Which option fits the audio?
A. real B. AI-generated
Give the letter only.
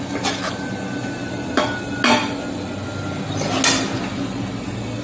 A